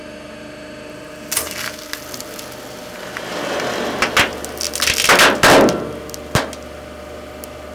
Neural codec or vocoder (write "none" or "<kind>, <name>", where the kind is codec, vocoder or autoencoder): none